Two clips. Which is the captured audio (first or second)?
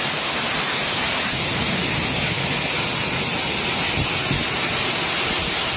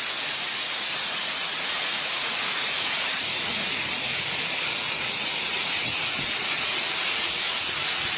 first